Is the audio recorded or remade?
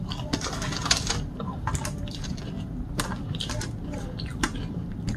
remade